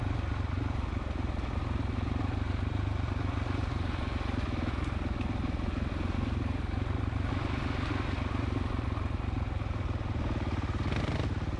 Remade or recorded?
recorded